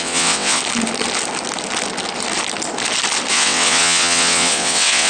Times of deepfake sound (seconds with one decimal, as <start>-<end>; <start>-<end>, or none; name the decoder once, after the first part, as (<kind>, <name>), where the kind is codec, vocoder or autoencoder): 0.0-0.6 (vocoder, WaveNeXt); 3.3-5.1